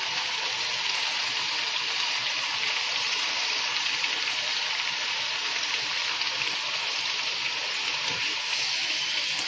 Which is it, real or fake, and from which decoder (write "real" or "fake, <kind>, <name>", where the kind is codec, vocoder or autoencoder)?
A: real